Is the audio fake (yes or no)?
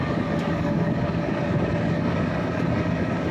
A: yes